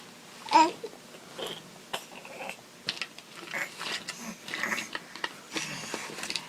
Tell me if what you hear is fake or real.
real